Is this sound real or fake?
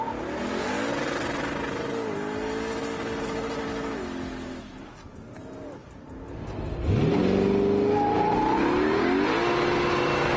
real